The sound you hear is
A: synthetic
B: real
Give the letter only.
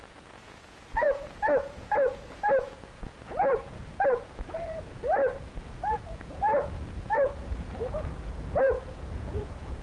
A